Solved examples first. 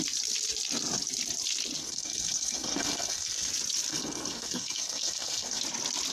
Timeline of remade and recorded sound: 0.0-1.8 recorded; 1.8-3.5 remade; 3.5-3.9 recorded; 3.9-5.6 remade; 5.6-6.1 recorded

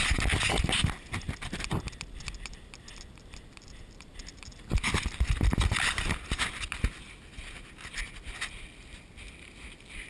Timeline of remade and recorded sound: 0.0-10.1 recorded

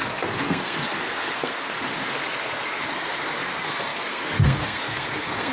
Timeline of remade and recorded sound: 0.0-5.5 remade

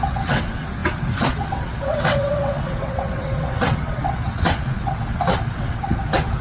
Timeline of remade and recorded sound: 0.0-6.4 remade

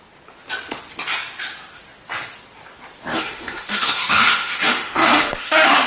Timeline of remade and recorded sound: 0.0-3.1 recorded; 3.1-5.9 remade

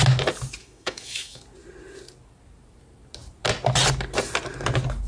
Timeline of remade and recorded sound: 0.0-0.6 recorded; 0.6-1.4 remade; 1.4-5.1 recorded

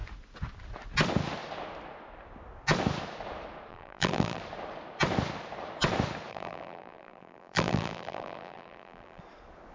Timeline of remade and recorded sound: 0.0-3.7 recorded; 3.7-4.4 remade; 4.4-6.3 recorded; 6.3-9.2 remade; 9.2-9.7 recorded